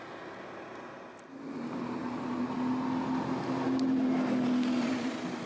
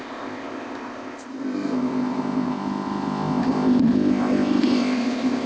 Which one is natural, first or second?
first